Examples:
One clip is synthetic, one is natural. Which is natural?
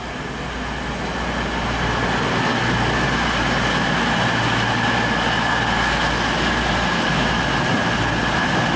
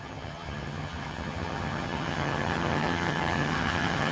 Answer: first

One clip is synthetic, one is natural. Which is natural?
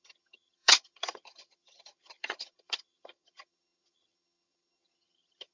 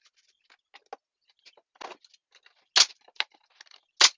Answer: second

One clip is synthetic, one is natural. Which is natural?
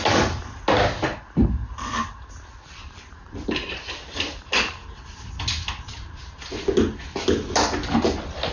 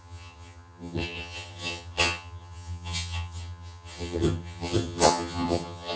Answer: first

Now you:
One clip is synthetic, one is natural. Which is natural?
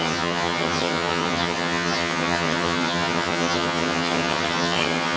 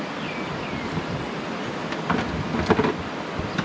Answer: second